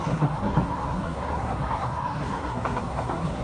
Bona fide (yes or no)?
no